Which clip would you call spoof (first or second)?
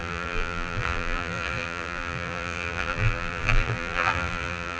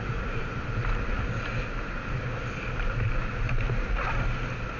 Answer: first